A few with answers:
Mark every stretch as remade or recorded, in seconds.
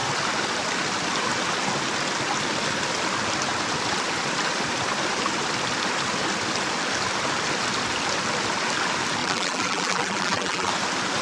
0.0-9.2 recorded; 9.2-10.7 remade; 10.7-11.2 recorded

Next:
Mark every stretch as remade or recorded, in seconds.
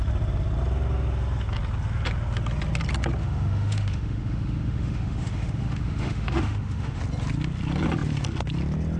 0.0-3.2 recorded; 3.2-7.0 remade; 7.0-9.0 recorded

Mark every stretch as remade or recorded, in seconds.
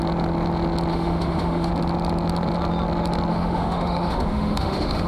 0.0-0.9 recorded; 0.9-1.7 remade; 1.7-3.3 recorded; 3.3-5.1 remade